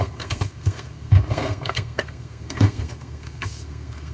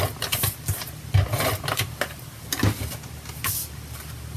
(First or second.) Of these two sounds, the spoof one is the first